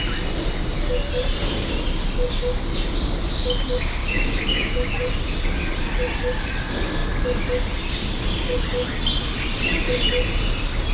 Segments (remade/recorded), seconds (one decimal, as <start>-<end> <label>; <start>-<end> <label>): 0.0-4.0 recorded; 4.0-4.7 remade; 4.7-10.9 recorded